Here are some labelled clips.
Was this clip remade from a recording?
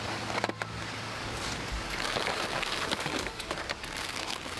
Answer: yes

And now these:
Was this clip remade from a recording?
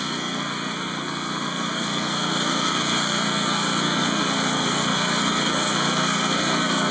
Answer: yes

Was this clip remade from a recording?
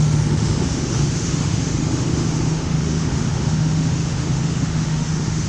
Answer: yes